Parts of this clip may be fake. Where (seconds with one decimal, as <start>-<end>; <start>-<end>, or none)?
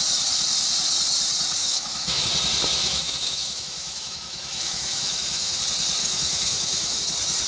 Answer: 1.6-2.2; 2.8-5.6; 6.0-7.0